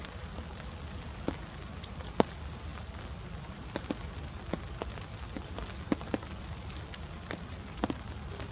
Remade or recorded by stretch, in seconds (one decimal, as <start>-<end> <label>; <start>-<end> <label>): 0.0-8.5 recorded